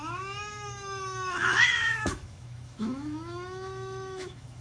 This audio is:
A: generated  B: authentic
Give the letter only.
A